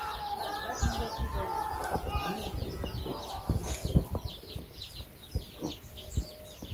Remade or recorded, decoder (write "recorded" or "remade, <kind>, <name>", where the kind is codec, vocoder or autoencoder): recorded